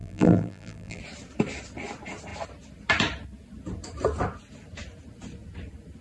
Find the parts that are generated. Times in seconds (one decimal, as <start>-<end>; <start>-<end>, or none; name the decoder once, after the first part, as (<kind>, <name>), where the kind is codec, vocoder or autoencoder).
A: 0.0-1.0 (vocoder, BigVGAN v2)